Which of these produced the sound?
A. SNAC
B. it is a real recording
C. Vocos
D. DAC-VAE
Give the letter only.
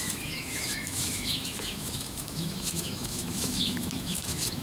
D